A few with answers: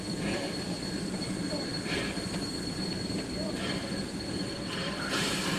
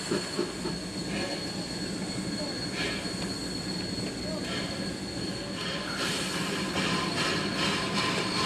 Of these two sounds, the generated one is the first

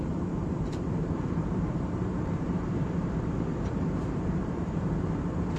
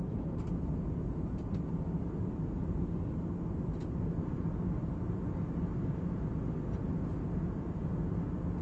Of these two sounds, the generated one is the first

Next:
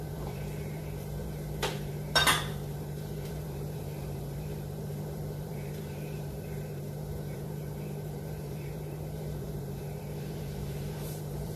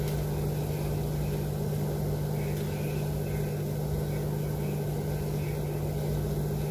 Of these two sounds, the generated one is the first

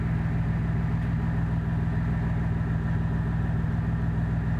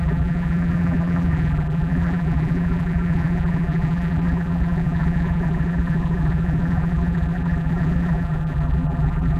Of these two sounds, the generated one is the second